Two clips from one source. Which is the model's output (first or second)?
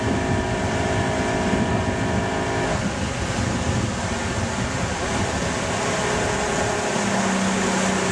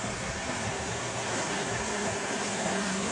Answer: second